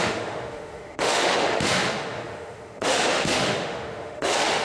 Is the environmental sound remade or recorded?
remade